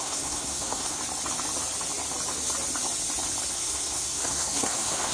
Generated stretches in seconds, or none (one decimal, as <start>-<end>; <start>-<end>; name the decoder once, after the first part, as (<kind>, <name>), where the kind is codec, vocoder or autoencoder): 0.0-1.0 (codec, SNAC); 3.5-5.1